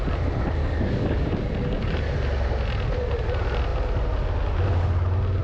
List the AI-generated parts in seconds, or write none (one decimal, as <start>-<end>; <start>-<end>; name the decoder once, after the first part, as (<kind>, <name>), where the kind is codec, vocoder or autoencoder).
0.6-2.1 (codec, DAC)